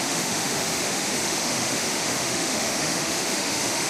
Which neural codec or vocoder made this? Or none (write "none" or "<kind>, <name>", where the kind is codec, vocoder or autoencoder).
autoencoder, DAC-VAE